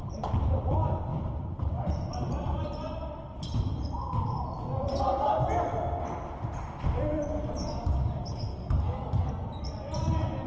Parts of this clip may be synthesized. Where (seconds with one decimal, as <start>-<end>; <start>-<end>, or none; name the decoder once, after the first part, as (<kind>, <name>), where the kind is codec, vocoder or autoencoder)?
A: 8.5-9.3 (codec, DAC)